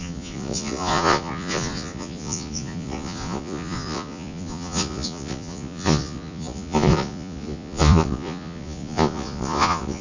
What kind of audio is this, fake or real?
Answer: fake